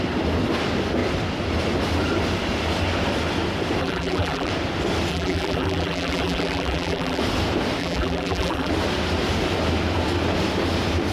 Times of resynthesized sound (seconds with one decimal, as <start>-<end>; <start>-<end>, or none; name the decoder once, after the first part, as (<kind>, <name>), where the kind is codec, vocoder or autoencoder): 3.8-4.5 (vocoder, BigVGAN v2); 5.1-7.2; 7.8-8.7